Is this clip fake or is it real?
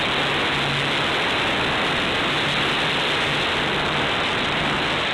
real